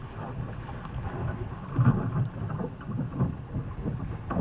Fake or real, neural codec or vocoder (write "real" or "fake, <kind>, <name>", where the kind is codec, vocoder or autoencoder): real